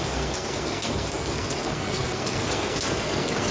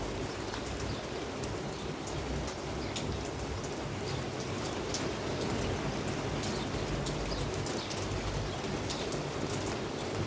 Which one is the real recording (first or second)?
second